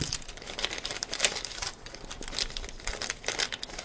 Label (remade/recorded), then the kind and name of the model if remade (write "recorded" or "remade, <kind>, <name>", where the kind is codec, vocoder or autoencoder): recorded